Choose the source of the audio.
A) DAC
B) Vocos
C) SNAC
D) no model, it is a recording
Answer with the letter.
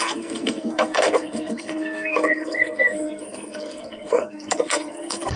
C